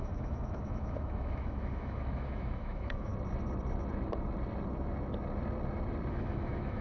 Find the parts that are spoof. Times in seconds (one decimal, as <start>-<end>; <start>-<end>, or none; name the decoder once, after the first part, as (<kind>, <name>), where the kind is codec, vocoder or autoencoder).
0.0-3.1 (autoencoder, DAC-VAE); 6.1-6.8